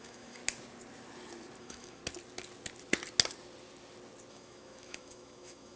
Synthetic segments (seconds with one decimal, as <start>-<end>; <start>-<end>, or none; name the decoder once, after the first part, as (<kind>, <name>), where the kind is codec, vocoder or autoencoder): 0.0-0.4 (autoencoder, DAC-VAE); 1.6-2.0; 4.3-5.8